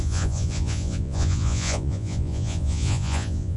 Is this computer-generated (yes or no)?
yes